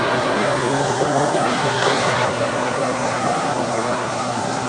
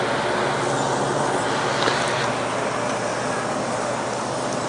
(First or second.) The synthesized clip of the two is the first